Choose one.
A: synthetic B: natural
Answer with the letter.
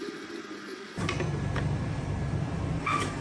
B